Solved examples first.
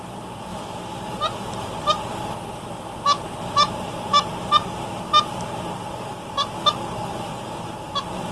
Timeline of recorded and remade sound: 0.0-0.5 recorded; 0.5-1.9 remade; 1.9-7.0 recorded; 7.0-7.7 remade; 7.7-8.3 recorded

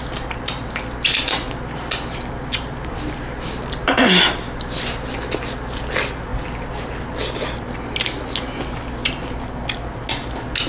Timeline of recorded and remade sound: 0.0-10.7 recorded

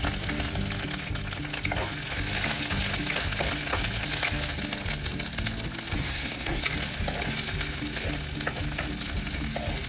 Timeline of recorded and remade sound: 0.0-6.0 recorded; 6.0-6.6 remade; 6.6-9.9 recorded

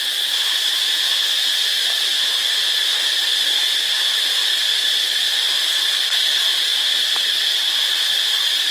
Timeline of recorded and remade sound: 0.0-8.7 recorded